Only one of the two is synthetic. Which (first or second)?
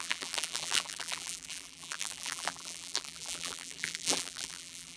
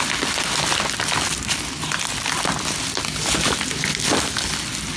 first